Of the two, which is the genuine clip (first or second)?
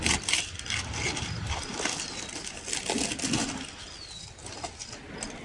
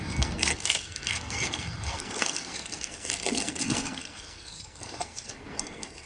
first